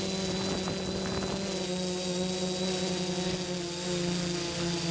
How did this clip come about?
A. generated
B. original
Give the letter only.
B